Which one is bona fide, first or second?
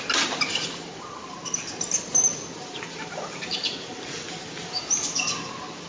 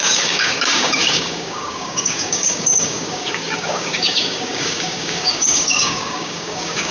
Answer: first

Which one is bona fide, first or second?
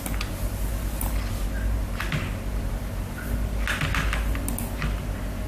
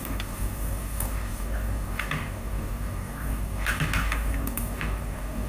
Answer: first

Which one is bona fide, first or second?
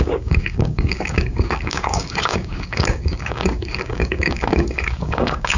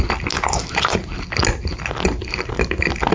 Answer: second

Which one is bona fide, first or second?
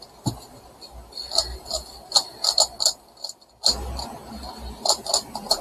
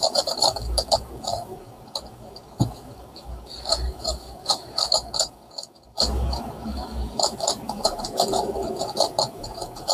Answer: first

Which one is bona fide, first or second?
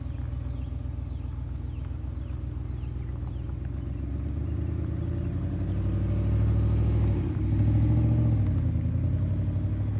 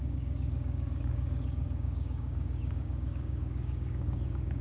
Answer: first